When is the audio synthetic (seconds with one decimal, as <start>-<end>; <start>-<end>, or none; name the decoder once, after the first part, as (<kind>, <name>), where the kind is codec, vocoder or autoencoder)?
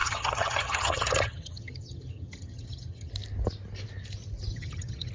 0.0-3.1 (vocoder, HiFi-GAN); 4.5-5.1